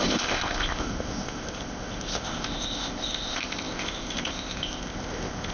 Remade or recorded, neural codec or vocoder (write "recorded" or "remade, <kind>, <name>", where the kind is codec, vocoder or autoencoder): remade, codec, ZipCodec